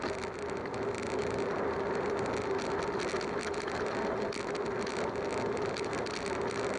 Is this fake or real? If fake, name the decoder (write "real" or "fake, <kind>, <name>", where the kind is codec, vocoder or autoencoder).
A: real